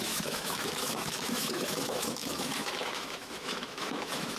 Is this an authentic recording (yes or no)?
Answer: no